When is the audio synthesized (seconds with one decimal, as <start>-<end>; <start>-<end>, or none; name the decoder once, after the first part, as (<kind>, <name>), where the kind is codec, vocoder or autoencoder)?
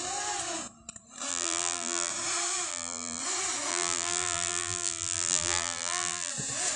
1.3-2.1 (vocoder, BigVGAN v2); 2.7-3.2; 3.7-6.3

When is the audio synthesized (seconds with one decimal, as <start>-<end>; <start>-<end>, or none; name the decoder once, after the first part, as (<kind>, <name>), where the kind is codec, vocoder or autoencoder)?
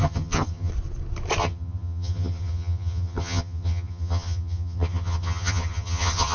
0.0-0.7 (vocoder, HiFi-GAN); 1.4-6.3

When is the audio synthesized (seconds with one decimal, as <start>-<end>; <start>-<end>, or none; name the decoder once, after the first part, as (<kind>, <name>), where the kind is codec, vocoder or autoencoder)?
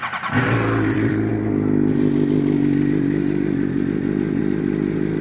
none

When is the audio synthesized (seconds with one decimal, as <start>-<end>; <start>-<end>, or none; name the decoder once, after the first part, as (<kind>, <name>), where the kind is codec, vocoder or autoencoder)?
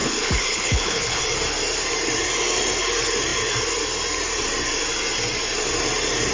0.0-1.2 (codec, HILCodec)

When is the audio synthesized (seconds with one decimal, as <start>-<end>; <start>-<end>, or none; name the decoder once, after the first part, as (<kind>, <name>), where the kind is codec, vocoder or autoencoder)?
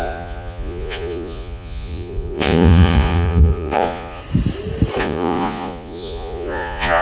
0.0-4.2 (vocoder, Vocos); 5.0-7.0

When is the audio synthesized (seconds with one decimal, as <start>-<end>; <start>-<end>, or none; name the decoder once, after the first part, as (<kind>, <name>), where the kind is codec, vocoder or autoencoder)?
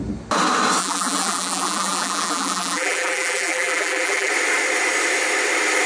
0.8-4.3 (vocoder, BigVGAN v2)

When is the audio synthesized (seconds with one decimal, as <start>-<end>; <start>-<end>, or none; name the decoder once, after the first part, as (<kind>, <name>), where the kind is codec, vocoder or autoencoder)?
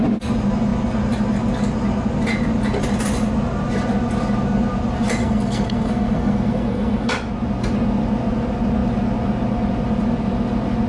5.2-7.1 (codec, SNAC)